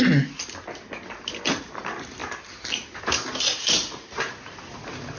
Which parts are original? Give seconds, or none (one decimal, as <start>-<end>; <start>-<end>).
0.0-5.2